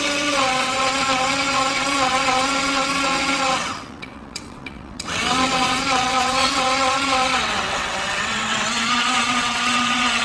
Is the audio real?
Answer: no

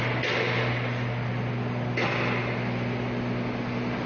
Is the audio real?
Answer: yes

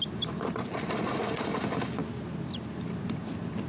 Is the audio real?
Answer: yes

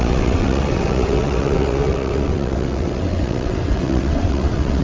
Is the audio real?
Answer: no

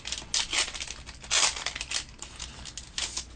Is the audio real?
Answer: yes